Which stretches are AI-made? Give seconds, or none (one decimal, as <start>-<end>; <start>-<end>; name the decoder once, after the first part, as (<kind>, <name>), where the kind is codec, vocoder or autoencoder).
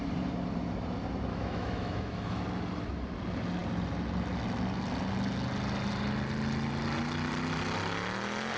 1.3-2.4 (autoencoder, DAC-VAE)